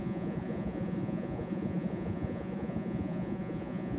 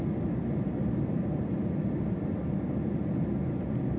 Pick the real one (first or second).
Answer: second